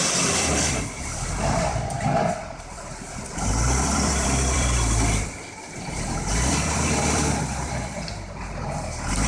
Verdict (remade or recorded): remade